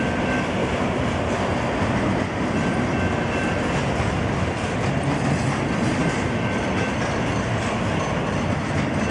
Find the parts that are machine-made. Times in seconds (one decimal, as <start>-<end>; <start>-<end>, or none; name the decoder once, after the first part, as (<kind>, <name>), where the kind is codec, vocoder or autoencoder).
0.6-1.1 (vocoder, BigVGAN v2); 6.0-7.5